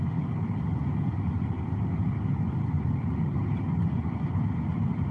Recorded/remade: recorded